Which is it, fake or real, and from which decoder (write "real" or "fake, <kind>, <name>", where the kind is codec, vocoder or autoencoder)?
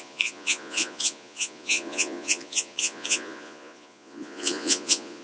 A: fake, vocoder, Vocos